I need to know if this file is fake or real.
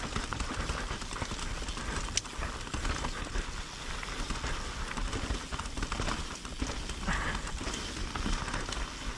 real